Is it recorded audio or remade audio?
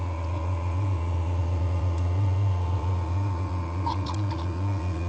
remade